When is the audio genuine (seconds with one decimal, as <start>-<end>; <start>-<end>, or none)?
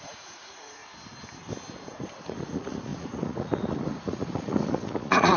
0.8-1.8